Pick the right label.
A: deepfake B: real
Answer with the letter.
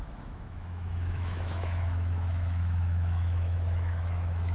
A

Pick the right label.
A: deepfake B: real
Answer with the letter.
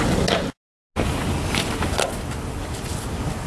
B